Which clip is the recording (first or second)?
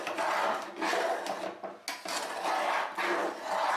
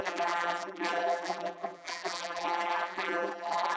first